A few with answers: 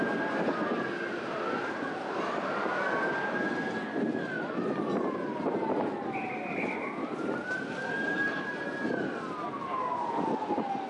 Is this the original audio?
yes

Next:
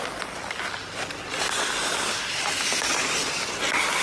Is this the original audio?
yes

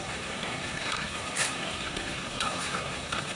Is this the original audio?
no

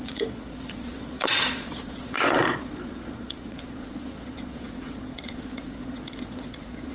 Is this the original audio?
no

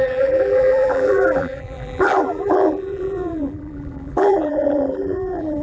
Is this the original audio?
no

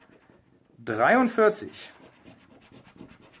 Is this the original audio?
yes